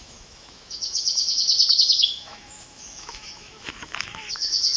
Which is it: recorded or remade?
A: remade